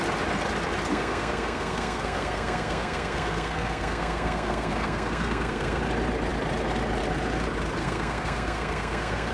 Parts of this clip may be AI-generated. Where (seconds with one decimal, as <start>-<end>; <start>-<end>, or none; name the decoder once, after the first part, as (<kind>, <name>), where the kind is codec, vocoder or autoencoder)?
0.9-5.8 (codec, SNAC); 7.8-9.3